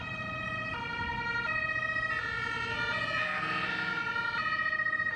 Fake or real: fake